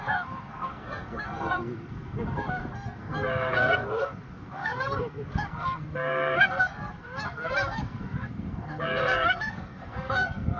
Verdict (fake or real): fake